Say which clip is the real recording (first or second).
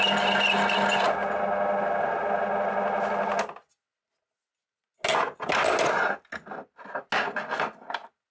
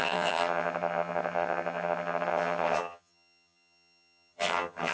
first